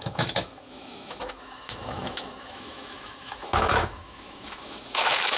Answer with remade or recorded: remade